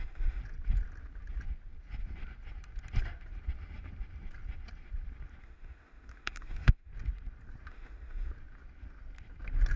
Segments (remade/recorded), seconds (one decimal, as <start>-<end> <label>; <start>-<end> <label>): 0.0-0.4 remade; 0.4-5.4 recorded; 5.4-6.9 remade; 6.9-7.7 recorded; 7.7-8.3 remade; 8.3-9.8 recorded